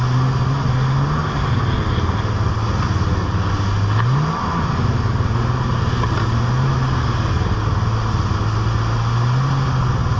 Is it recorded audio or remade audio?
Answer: recorded